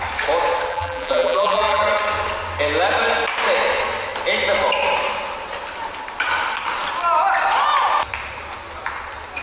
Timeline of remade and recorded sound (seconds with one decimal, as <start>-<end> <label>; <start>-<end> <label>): 0.0-0.7 recorded; 0.7-1.8 remade; 1.8-9.4 recorded